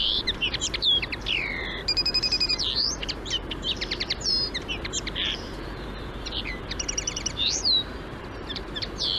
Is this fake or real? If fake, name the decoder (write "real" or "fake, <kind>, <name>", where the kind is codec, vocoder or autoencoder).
fake, vocoder, BigVGAN v2